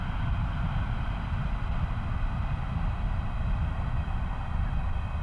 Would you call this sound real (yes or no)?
yes